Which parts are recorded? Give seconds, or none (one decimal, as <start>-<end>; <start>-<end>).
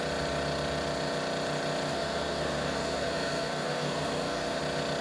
0.0-1.9; 4.6-5.0